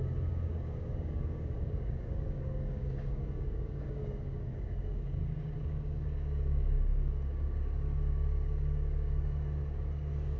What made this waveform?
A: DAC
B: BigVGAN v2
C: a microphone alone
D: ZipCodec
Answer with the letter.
A